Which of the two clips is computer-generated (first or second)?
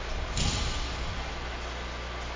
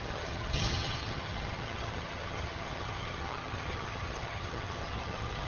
second